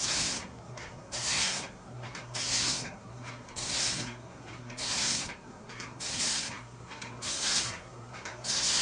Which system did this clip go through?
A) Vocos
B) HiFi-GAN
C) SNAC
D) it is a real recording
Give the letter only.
C